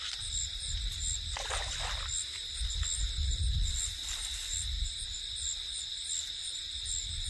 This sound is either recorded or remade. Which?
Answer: recorded